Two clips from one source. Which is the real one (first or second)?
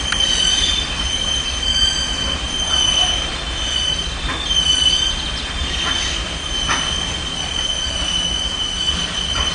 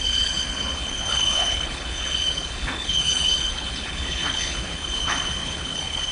first